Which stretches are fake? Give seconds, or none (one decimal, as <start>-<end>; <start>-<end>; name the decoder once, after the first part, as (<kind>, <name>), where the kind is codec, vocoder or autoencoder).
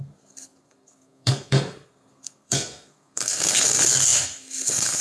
0.0-5.0 (codec, SNAC)